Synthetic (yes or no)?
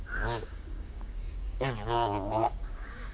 yes